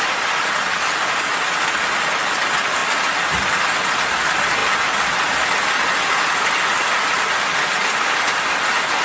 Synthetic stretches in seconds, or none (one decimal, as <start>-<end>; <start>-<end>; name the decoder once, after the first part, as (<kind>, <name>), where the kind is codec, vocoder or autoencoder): none